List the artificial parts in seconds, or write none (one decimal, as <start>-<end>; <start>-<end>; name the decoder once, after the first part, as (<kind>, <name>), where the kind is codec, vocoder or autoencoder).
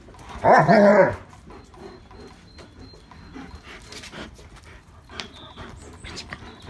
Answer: none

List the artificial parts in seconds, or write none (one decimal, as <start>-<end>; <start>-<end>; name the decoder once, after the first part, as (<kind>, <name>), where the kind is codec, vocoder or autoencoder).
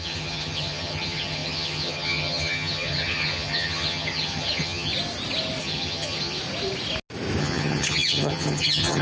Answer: 0.0-4.9 (vocoder, HiFi-GAN); 5.6-6.4; 7.4-9.0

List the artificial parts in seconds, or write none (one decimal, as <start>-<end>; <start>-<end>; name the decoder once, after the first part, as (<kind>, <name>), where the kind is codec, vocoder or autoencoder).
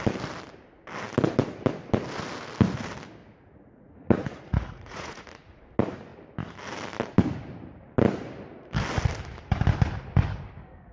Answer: 3.2-5.6 (vocoder, Vocos)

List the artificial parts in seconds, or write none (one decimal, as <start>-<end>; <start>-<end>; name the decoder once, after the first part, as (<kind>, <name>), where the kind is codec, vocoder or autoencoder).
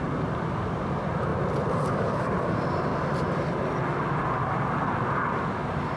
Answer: 0.0-1.3 (vocoder, BigVGAN v2); 2.0-2.9; 5.2-6.0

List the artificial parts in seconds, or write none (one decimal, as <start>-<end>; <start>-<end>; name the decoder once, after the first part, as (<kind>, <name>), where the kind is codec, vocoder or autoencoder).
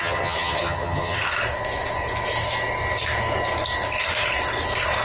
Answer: 0.0-1.2 (vocoder, HiFi-GAN)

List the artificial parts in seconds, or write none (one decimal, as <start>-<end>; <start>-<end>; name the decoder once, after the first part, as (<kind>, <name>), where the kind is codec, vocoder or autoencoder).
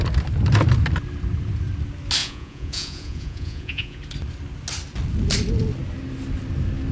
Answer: 2.2-4.0 (vocoder, Vocos)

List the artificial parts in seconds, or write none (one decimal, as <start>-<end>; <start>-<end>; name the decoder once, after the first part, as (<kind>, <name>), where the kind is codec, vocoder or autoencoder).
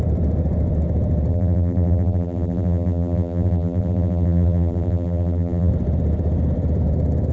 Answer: 1.3-5.7 (vocoder, BigVGAN v2)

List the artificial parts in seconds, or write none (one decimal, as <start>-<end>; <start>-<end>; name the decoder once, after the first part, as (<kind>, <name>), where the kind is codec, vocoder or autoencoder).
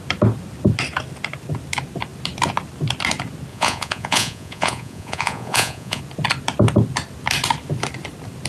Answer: 3.5-6.0 (vocoder, Vocos)